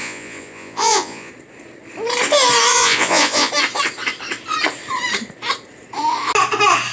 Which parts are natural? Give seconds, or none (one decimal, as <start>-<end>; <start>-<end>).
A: 1.3-2.7; 3.5-6.9